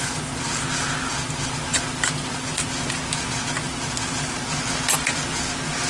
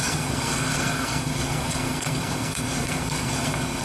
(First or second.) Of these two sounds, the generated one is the second